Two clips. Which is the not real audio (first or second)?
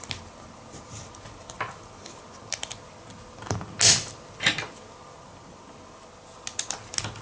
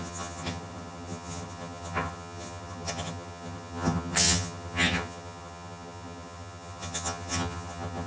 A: second